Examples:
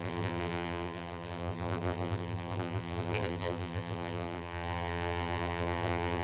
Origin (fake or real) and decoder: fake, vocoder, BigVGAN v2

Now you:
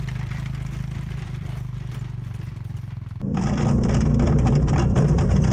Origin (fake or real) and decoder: fake, vocoder, BigVGAN v2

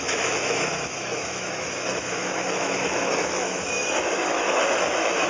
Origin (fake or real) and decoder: fake, autoencoder, DAC-VAE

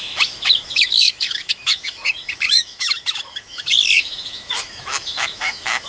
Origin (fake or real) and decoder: fake, autoencoder, DAC-VAE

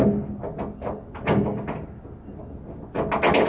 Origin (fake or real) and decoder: real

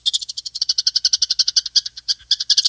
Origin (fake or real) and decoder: real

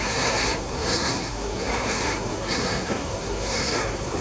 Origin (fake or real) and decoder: fake, codec, SNAC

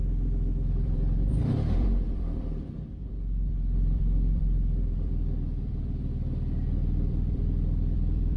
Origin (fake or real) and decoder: fake, vocoder, BigVGAN v2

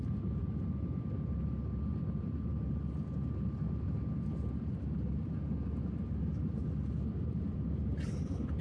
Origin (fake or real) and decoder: real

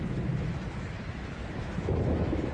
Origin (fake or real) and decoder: fake, autoencoder, DAC-VAE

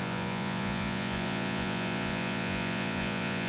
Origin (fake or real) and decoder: fake, vocoder, Vocos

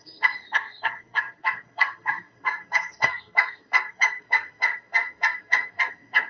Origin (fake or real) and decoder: fake, codec, SNAC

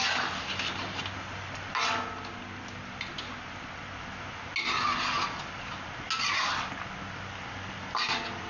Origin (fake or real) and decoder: real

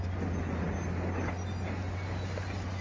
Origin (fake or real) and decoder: real